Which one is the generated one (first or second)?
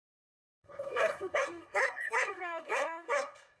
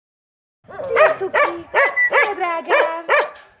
first